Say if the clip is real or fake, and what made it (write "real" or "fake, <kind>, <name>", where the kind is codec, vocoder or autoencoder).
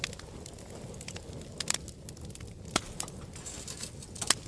real